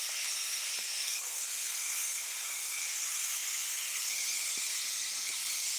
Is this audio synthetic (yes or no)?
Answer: yes